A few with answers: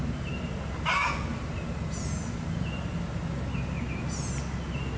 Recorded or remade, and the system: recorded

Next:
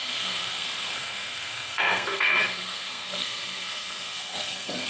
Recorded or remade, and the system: remade, codec, SNAC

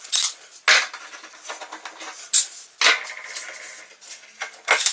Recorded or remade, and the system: recorded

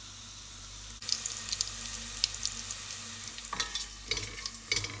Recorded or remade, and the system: recorded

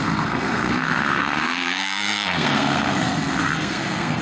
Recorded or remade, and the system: remade, codec, SNAC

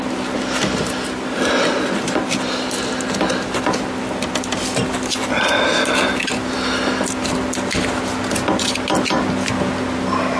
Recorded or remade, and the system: recorded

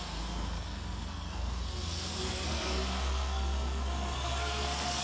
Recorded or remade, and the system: remade, codec, SNAC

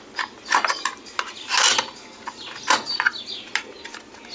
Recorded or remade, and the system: recorded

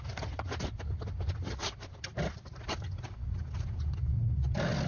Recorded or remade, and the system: recorded